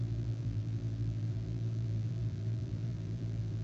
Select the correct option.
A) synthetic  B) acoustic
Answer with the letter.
A